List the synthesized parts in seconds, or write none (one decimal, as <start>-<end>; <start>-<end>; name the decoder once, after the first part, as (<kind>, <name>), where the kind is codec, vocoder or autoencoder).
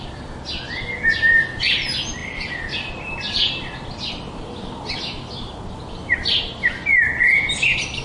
none